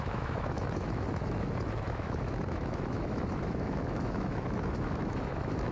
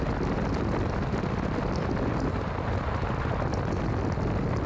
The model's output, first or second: first